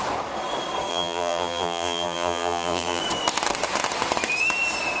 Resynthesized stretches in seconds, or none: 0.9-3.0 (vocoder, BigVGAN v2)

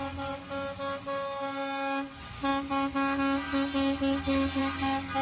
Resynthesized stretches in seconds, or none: none

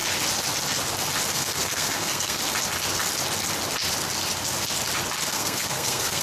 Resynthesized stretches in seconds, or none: 1.3-2.4 (codec, SNAC); 5.3-6.2

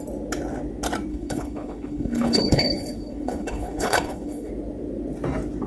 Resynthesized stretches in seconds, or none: 1.1-4.5 (codec, HILCodec)

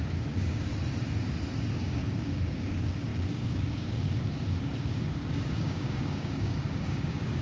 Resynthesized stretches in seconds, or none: 0.0-0.7 (codec, DAC); 1.7-7.4

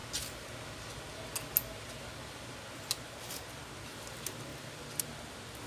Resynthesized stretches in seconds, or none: none